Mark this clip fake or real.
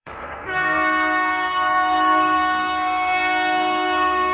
fake